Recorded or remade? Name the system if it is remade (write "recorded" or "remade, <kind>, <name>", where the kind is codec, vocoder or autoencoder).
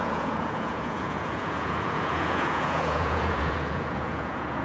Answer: remade, vocoder, Vocos